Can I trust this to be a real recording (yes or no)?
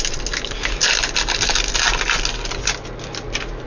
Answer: yes